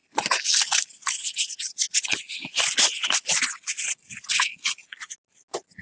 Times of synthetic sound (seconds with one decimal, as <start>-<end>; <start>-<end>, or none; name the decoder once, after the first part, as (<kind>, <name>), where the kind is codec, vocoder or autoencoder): none